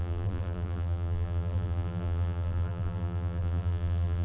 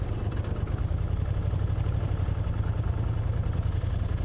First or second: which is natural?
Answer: second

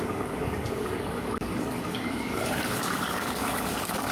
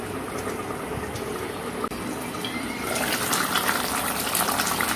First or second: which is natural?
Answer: second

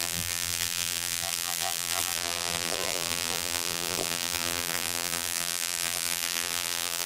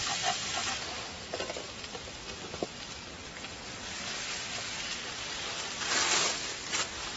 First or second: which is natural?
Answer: second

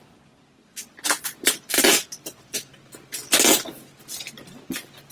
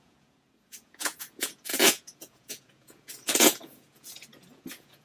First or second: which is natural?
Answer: first